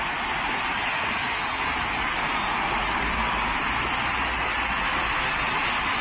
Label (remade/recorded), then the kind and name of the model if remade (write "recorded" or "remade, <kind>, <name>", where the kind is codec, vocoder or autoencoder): recorded